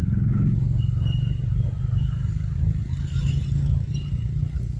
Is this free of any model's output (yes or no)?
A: yes